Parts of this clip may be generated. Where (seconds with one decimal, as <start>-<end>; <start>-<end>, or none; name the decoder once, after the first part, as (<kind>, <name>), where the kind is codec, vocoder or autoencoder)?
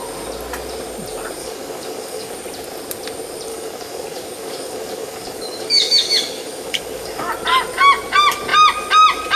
1.4-2.3 (codec, DAC); 3.5-7.3